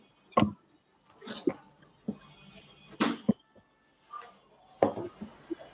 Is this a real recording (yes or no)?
yes